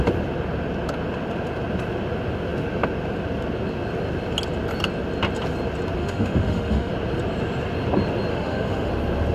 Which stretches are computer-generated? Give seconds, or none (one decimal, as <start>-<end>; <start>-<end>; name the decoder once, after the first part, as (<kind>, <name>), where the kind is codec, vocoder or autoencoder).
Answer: 6.0-6.9 (autoencoder, DAC-VAE); 8.3-8.9